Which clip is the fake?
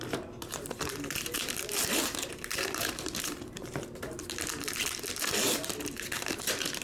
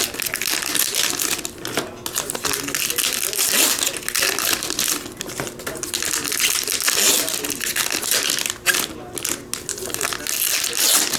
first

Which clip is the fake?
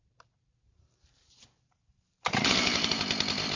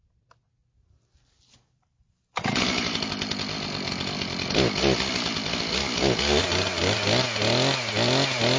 first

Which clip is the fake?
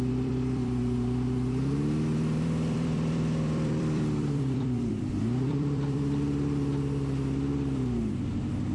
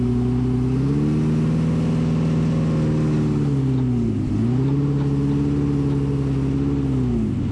first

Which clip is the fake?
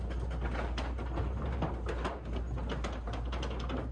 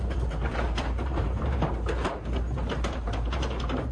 second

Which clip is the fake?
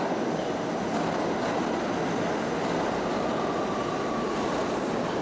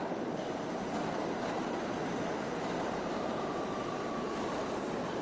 second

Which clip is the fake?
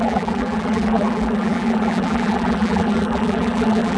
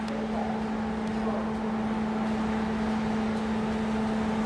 first